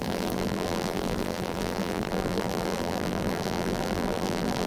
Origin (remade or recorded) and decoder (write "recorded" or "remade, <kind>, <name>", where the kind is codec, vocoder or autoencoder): remade, vocoder, BigVGAN v2